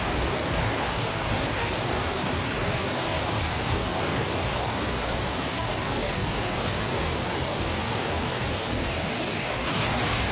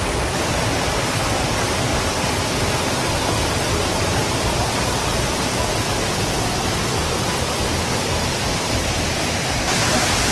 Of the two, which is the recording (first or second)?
second